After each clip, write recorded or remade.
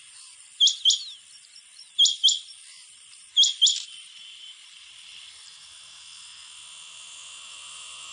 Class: recorded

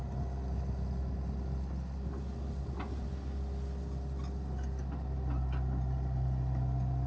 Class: recorded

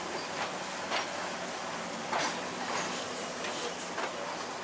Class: recorded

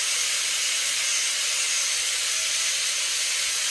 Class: recorded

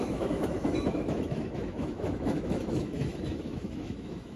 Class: remade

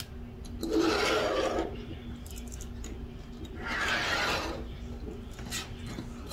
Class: recorded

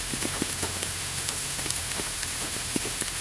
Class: remade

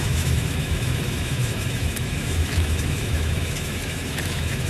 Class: remade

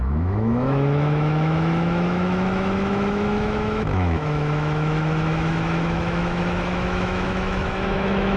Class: remade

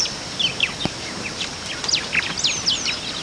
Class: recorded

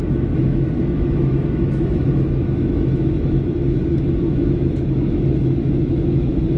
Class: remade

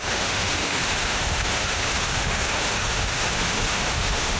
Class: remade